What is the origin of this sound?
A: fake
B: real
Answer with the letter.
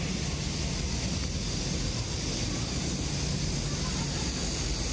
B